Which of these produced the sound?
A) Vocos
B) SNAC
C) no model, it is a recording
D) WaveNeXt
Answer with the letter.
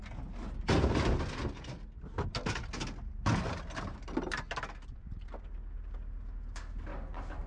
C